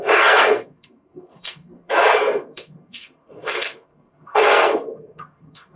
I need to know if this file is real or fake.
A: fake